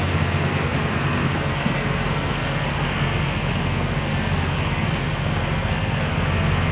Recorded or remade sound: remade